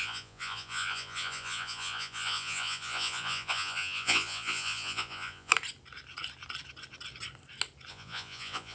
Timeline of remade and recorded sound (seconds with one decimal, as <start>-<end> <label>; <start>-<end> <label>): 0.0-5.5 remade; 5.5-7.9 recorded; 7.9-8.7 remade